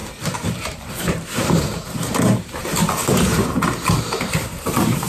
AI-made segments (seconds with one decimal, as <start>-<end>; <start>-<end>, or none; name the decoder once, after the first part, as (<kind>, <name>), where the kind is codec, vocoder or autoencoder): 0.0-2.6 (vocoder, BigVGAN v2); 3.1-5.1